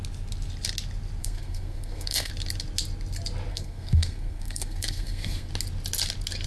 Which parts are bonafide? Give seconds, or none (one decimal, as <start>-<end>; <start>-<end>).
0.0-1.2; 2.3-3.5; 5.5-6.5

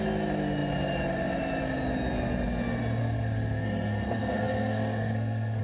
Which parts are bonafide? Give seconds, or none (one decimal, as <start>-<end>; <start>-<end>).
0.0-3.0

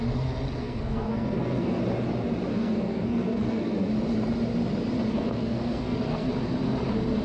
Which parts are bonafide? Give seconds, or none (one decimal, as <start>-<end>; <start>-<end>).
0.0-0.6; 1.8-2.5; 3.9-5.1; 6.3-7.2

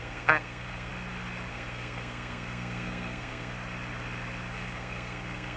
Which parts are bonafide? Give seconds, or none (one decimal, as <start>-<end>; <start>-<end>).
0.9-1.5; 3.5-4.5